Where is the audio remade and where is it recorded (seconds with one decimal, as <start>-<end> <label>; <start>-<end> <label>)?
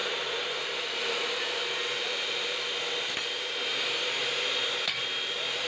0.0-3.4 remade; 3.4-4.2 recorded; 4.2-5.1 remade; 5.1-5.7 recorded